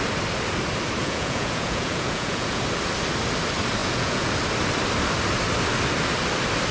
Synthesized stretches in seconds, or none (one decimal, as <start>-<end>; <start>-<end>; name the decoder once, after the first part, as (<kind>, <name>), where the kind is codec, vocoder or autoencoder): 1.0-2.6 (vocoder, Vocos); 3.8-4.3